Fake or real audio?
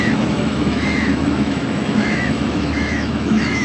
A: fake